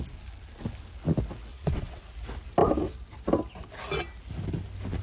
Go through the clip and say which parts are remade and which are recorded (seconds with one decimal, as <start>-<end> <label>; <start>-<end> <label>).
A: 0.0-1.5 recorded; 1.5-2.0 remade; 2.0-5.0 recorded